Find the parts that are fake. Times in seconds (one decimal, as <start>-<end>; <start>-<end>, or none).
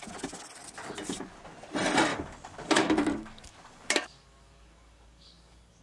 2.1-5.8